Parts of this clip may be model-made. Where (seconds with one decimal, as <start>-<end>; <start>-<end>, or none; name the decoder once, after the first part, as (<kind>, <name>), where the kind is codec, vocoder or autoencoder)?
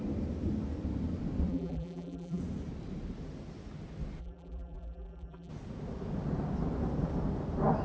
1.5-2.4 (vocoder, BigVGAN v2); 4.2-5.5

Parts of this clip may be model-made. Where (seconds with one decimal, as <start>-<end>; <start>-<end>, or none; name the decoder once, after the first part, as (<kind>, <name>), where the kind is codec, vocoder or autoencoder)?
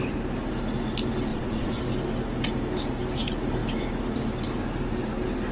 1.3-1.8 (vocoder, Vocos)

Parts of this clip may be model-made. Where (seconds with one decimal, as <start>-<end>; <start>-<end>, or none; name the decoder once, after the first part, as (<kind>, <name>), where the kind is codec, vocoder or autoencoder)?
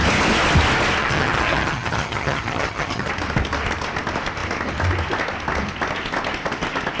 1.0-3.1 (vocoder, HiFi-GAN)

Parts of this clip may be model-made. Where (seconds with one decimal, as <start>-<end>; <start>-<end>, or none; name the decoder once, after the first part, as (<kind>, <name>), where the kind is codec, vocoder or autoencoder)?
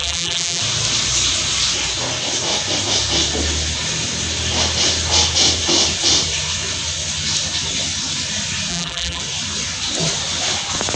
0.0-0.6 (vocoder, BigVGAN v2); 8.7-9.2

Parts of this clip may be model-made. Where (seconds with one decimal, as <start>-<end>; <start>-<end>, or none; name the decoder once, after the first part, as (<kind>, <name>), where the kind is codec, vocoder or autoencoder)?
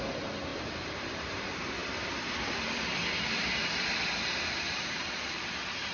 0.5-1.4 (vocoder, BigVGAN v2); 1.8-5.2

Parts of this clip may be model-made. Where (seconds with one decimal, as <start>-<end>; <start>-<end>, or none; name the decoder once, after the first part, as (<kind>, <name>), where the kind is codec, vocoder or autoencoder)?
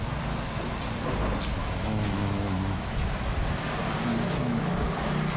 1.6-3.1 (autoencoder, DAC-VAE); 4.1-4.9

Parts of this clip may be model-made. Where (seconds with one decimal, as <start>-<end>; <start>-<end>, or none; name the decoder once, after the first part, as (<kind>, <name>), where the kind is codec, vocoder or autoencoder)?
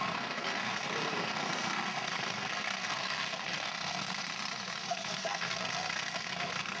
0.0-4.2 (codec, SNAC); 4.9-6.8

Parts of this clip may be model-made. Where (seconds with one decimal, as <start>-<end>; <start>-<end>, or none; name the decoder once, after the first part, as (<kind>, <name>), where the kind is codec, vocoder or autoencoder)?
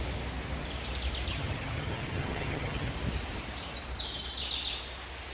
1.3-2.9 (vocoder, HiFi-GAN)